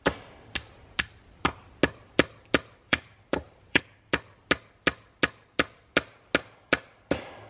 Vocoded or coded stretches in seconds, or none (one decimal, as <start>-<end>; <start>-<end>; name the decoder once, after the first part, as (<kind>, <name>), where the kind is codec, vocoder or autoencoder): 2.8-3.8 (vocoder, BigVGAN v2)